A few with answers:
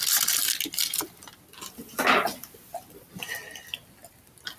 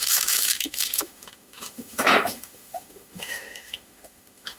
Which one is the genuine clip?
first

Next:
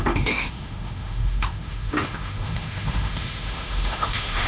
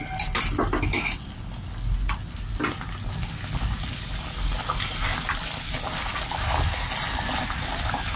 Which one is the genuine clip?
second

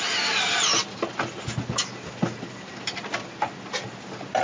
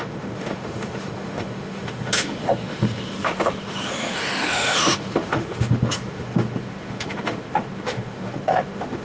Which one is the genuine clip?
first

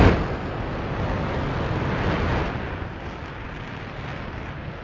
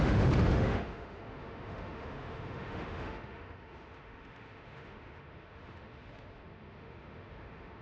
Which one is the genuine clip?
first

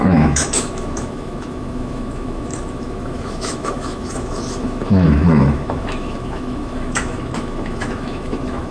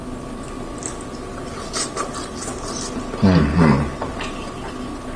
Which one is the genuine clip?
second